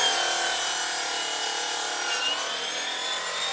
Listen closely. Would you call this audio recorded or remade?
recorded